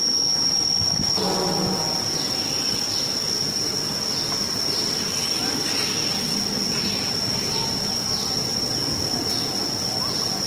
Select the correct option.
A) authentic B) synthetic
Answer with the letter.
A